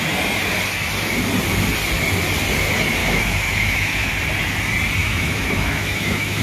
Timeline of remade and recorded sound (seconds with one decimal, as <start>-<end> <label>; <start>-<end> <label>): 0.0-3.0 recorded; 3.0-4.1 remade; 4.1-5.0 recorded; 5.0-6.4 remade